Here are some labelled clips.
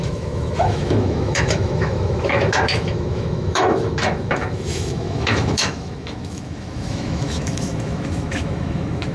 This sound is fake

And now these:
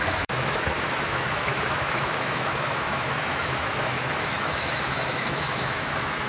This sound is fake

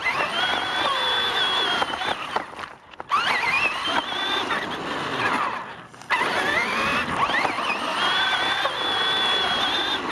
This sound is real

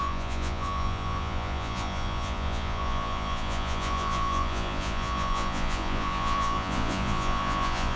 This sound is fake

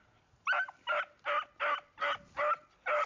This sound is real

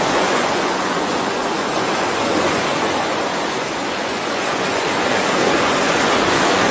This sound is fake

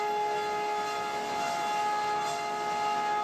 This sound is real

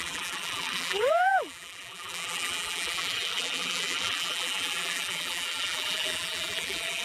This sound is fake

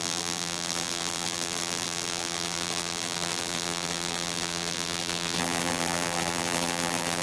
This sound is fake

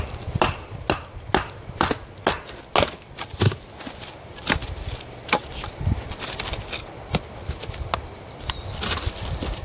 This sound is real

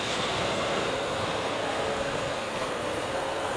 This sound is fake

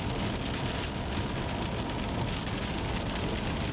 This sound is real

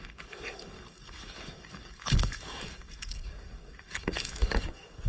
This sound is fake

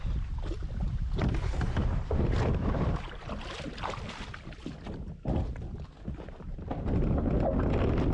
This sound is real